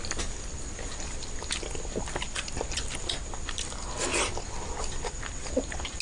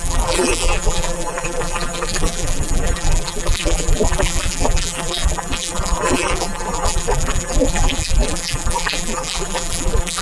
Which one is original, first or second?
first